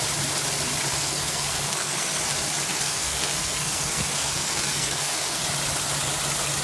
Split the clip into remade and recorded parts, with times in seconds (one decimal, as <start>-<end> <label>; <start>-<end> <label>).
0.0-0.9 recorded; 0.9-2.2 remade; 2.2-2.7 recorded; 2.7-5.4 remade; 5.4-6.6 recorded